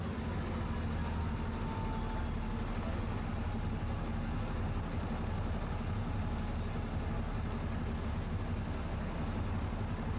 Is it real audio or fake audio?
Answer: real